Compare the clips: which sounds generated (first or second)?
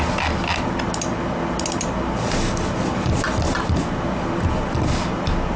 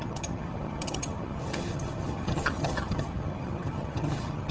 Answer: second